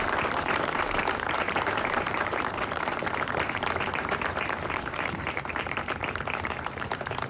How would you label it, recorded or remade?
remade